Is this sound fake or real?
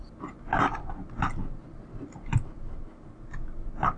real